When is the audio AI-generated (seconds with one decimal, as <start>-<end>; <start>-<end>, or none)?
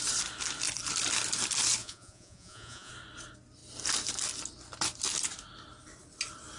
1.8-2.9